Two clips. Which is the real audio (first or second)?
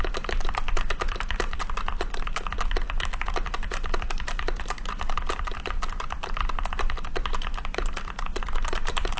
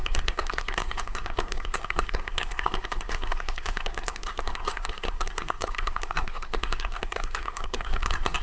first